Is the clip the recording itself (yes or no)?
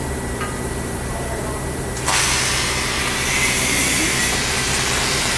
no